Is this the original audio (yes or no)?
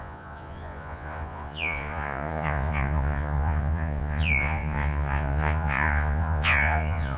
no